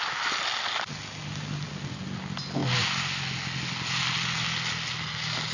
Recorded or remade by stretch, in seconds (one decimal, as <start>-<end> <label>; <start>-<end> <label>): 0.0-5.5 recorded